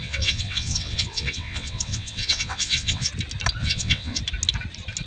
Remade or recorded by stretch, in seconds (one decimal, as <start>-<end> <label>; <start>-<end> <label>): 0.0-3.1 remade; 3.1-3.6 recorded; 3.6-4.2 remade; 4.2-5.1 recorded